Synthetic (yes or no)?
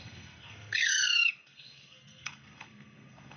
yes